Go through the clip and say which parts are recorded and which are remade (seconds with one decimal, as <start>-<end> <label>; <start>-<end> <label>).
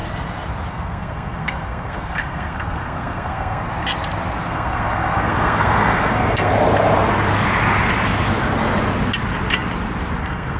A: 0.0-0.7 recorded; 0.7-3.7 remade; 3.7-4.5 recorded; 4.5-6.5 remade; 6.5-10.2 recorded; 10.2-10.6 remade